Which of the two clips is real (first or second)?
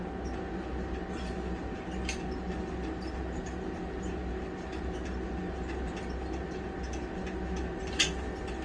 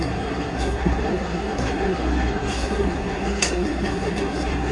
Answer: first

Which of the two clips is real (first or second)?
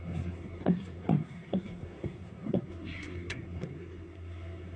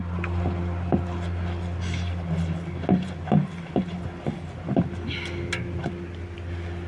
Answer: second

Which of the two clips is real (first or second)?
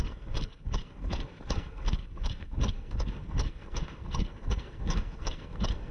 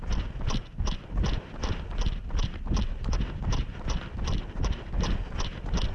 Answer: second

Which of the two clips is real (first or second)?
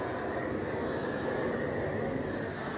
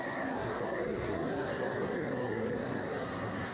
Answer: first